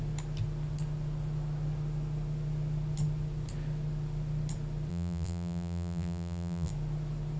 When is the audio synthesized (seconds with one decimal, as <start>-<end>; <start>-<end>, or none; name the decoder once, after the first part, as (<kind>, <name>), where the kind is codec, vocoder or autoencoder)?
4.9-6.7 (vocoder, BigVGAN v2)